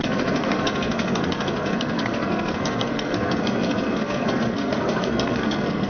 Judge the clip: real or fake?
fake